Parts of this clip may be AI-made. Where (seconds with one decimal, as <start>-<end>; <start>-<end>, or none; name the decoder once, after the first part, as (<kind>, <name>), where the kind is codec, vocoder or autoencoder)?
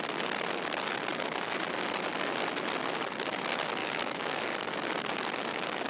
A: 3.8-4.4 (autoencoder, DAC-VAE)